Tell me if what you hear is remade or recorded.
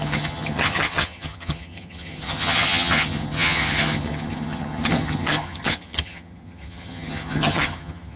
remade